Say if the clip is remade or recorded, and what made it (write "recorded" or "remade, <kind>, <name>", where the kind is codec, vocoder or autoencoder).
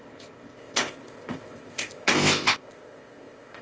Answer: remade, codec, ZipCodec